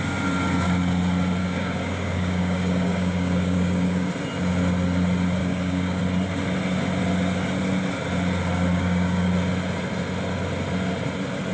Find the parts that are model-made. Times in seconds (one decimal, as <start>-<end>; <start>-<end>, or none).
1.4-4.1; 5.4-6.0; 8.7-9.3